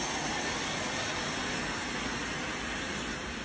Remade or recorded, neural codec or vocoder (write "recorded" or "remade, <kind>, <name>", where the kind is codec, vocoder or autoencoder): recorded